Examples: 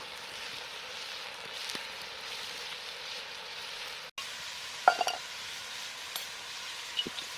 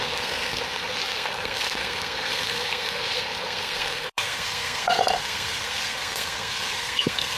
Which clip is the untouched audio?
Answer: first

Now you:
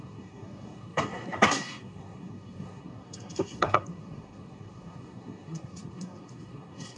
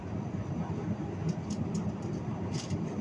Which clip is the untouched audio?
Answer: second